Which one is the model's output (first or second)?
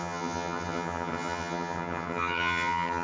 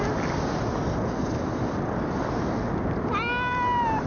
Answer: first